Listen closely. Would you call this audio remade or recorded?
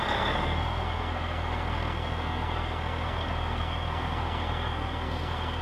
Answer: remade